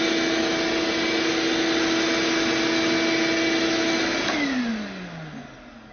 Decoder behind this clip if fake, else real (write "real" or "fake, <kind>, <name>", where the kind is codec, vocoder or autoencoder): real